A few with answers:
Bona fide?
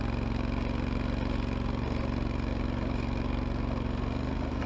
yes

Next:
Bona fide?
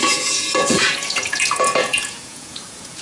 no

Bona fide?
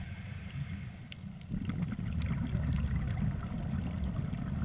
yes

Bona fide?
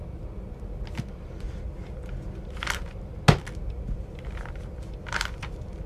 yes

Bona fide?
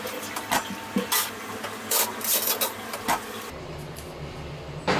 yes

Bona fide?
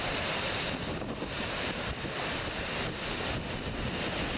yes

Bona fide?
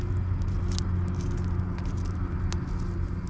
yes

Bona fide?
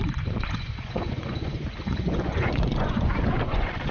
no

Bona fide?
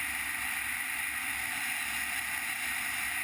yes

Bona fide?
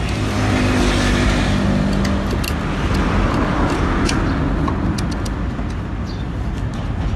yes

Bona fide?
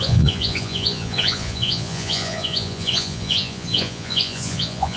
no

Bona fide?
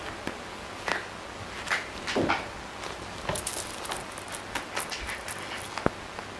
yes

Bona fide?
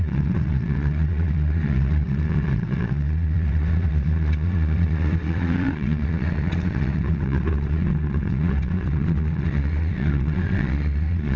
no